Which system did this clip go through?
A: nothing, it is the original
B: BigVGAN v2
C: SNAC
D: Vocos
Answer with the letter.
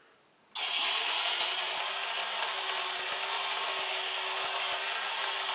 A